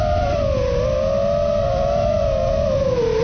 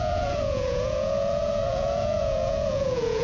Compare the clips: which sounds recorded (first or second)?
first